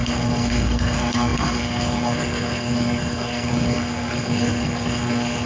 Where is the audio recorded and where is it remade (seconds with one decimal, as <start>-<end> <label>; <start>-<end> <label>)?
0.0-5.5 remade